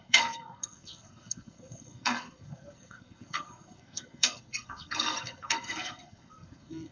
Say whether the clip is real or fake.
fake